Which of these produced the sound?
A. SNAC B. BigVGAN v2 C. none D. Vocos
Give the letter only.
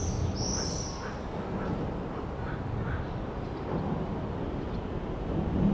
C